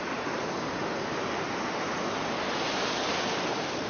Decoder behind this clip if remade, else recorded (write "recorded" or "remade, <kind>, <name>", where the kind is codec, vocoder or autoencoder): recorded